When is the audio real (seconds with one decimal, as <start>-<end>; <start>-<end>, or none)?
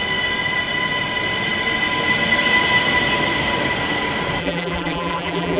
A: 0.0-4.4